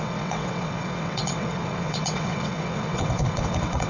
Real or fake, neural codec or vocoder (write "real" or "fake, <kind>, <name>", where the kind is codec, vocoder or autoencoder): fake, vocoder, WaveNeXt